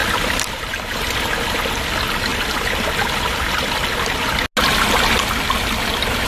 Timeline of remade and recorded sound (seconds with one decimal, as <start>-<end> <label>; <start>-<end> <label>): 0.0-1.1 remade; 1.1-6.3 recorded